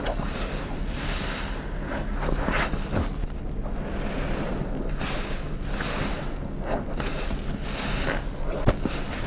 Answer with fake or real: real